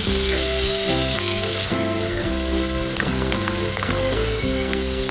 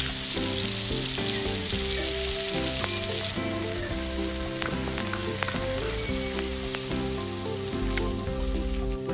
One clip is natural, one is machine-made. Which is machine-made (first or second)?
first